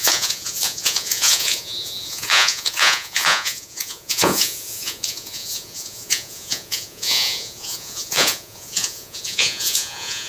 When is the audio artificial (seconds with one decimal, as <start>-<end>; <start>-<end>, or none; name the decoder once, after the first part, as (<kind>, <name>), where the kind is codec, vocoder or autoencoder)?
0.0-10.3 (vocoder, Vocos)